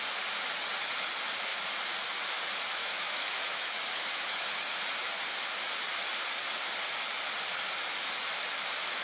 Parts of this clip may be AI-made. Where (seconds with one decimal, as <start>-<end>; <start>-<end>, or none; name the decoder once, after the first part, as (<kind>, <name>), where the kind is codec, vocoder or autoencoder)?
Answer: 2.8-4.6 (autoencoder, DAC-VAE)